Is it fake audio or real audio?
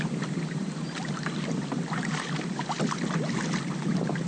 real